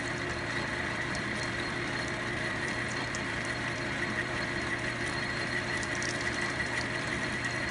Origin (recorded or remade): remade